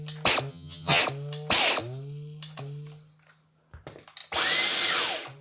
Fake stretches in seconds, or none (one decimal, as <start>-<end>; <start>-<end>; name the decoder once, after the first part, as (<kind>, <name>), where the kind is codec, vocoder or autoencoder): 0.5-1.0 (vocoder, HiFi-GAN)